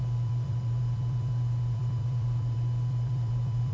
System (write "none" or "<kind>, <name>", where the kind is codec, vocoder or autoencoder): vocoder, BigVGAN v2